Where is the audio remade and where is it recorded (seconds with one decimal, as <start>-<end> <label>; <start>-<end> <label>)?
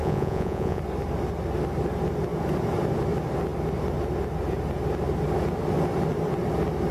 0.0-0.8 remade; 0.8-6.9 recorded